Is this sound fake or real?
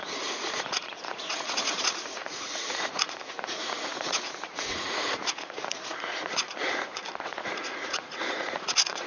fake